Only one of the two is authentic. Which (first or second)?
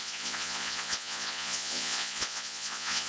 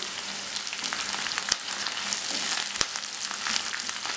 second